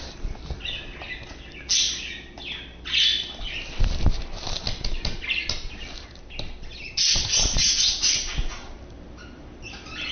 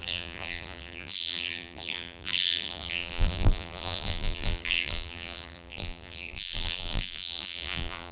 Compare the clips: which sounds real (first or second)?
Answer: first